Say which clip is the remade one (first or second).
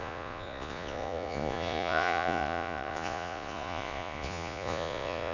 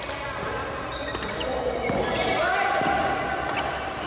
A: first